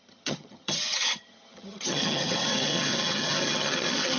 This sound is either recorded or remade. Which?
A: remade